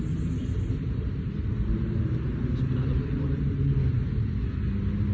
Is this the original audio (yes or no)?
yes